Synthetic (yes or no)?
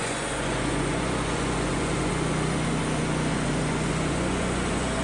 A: yes